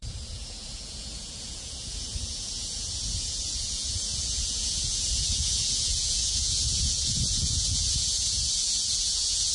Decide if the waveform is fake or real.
fake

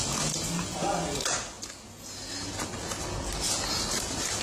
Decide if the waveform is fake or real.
real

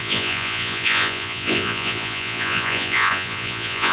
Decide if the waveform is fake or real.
fake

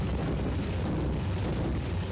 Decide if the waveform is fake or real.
real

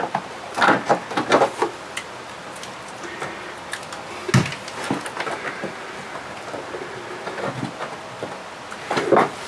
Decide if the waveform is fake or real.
real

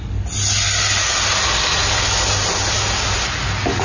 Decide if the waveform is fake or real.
real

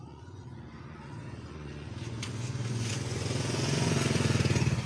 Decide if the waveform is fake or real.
fake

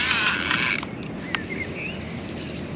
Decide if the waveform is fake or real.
real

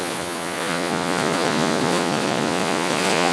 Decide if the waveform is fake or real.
fake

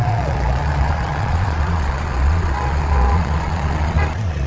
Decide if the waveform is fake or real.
fake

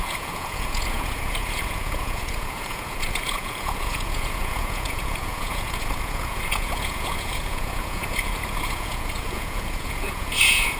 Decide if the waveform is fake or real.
fake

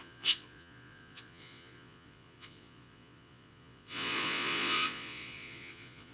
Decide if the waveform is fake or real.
fake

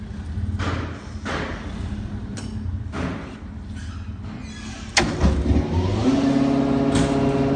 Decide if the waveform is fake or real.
real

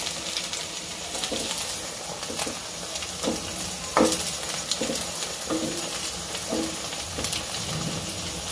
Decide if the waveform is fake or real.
real